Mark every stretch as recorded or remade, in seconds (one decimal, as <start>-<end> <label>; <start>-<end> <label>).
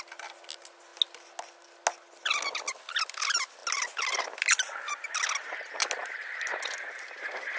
0.0-7.6 recorded